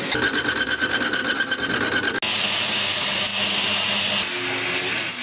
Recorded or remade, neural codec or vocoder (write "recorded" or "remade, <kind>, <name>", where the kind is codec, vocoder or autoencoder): recorded